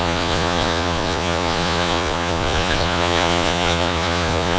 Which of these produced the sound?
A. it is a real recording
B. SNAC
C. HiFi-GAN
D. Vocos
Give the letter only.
D